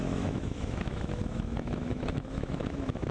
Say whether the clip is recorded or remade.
remade